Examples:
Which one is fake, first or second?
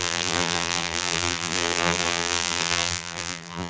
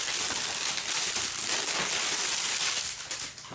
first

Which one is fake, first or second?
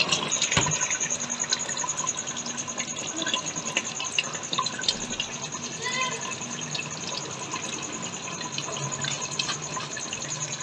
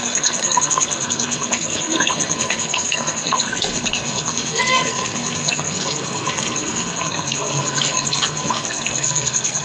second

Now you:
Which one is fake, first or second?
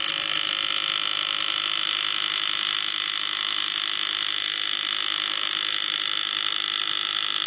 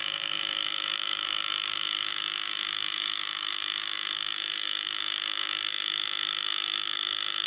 second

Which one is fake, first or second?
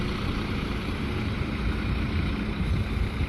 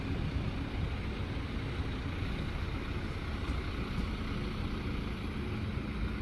first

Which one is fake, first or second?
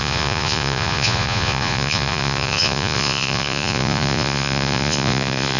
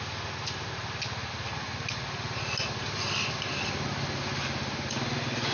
first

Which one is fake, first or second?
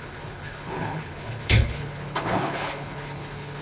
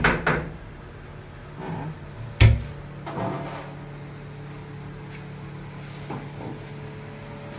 first